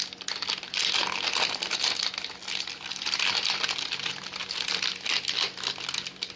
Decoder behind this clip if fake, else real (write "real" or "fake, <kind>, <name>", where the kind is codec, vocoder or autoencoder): real